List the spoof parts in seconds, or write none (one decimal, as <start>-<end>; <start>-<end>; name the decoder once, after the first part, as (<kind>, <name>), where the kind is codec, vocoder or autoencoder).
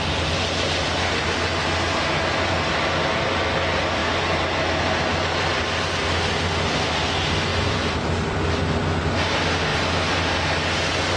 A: 7.5-9.0 (vocoder, BigVGAN v2)